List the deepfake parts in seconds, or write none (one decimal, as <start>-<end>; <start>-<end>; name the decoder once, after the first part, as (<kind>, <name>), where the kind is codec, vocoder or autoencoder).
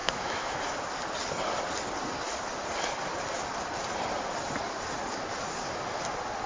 0.0-0.6 (autoencoder, DAC-VAE)